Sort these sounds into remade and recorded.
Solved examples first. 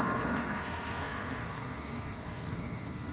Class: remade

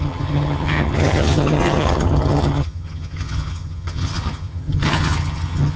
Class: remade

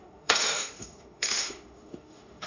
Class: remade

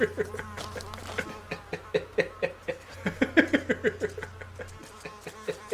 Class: recorded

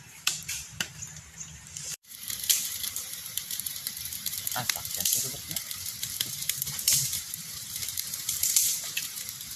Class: remade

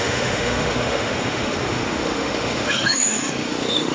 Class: remade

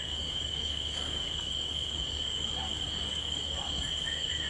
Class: remade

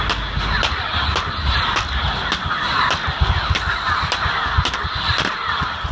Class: recorded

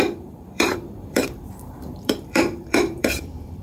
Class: remade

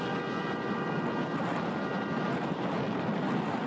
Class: recorded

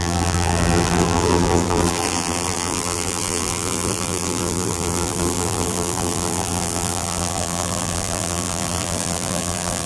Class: remade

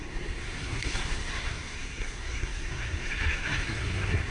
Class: remade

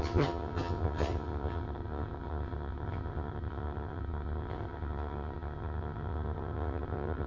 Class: remade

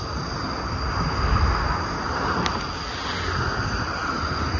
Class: recorded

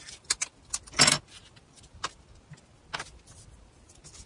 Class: recorded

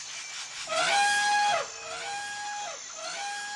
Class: recorded